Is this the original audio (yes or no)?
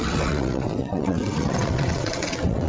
no